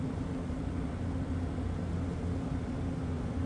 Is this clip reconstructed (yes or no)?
no